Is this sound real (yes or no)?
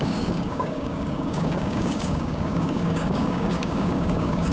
no